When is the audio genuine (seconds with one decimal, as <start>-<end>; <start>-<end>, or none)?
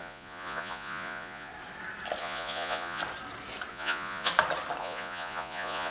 1.5-2.2; 3.0-3.7; 4.3-4.8